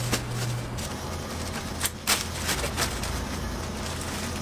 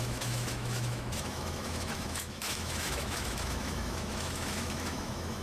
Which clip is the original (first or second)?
first